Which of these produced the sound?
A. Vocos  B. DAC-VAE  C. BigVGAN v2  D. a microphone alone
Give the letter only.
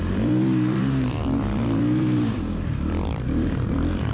C